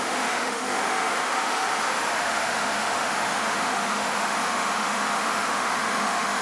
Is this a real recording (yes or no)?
no